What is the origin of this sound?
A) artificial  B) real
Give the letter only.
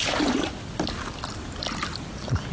B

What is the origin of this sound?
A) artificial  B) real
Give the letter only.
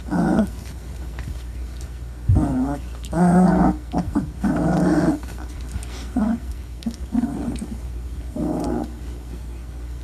A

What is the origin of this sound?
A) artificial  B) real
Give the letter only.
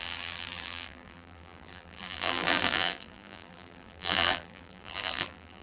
A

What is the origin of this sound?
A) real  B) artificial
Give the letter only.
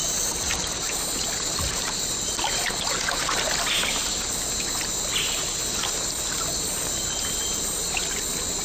A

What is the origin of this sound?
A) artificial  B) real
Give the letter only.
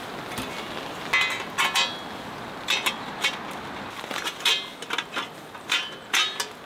B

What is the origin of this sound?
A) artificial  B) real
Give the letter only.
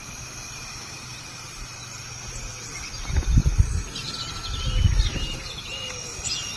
B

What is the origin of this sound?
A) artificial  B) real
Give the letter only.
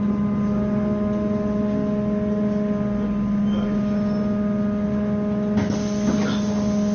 B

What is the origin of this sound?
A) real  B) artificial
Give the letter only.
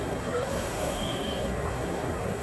B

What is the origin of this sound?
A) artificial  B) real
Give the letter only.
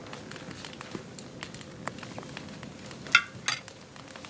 B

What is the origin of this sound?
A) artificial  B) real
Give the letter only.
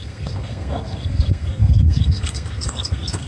A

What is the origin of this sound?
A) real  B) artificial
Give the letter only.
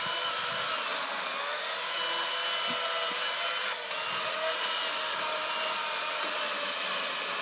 A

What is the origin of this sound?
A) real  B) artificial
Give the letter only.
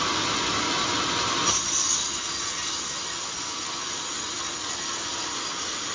A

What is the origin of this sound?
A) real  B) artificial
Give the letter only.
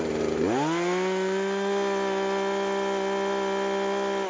A